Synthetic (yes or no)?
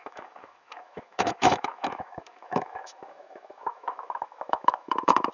yes